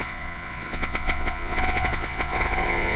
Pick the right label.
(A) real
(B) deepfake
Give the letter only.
B